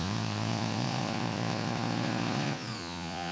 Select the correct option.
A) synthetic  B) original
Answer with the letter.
A